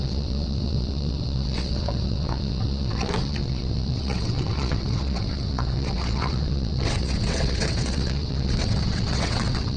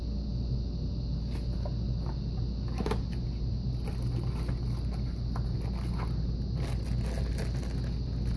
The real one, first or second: second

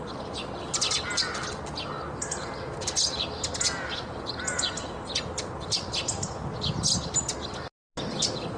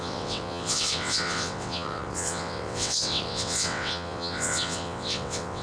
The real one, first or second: first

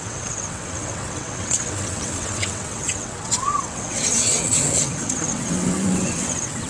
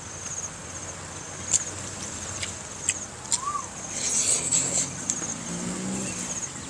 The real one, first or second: second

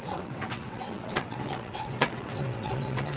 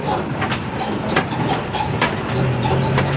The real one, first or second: second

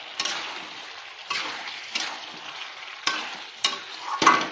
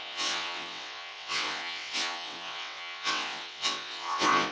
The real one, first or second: first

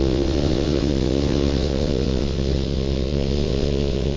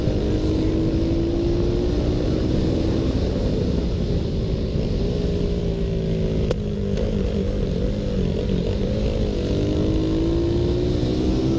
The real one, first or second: second